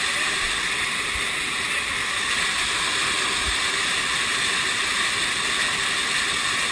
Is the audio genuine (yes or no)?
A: yes